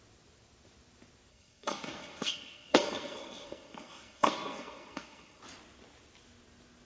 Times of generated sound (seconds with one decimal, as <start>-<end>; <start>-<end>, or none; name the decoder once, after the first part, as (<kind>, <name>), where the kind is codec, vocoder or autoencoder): 1.3-5.4 (codec, SNAC)